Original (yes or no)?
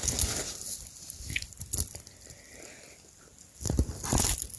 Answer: yes